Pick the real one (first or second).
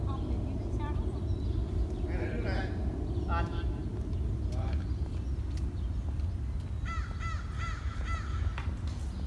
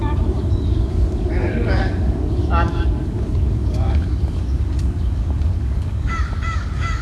first